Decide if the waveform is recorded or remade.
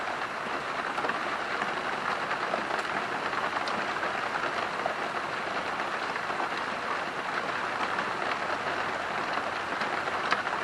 recorded